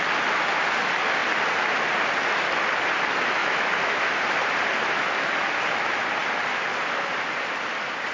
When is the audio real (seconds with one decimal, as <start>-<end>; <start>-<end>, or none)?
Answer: 0.0-3.4; 4.1-8.1

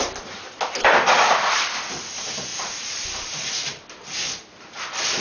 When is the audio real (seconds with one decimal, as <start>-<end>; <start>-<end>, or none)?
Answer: 0.0-2.5; 3.5-5.2

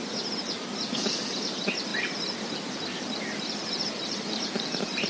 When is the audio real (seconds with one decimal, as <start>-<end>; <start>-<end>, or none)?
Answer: 0.0-1.9

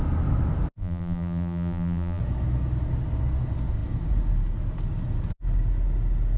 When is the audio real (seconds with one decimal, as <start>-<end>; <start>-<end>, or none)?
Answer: 0.0-0.8; 2.2-6.4

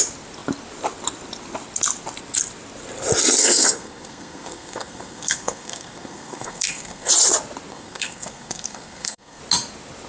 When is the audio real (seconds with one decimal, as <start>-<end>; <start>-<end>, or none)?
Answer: 0.0-3.4; 7.1-7.7; 9.4-10.1